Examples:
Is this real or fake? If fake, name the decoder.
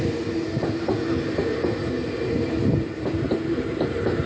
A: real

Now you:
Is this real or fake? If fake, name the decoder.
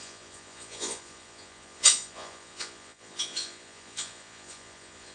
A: fake, vocoder, Vocos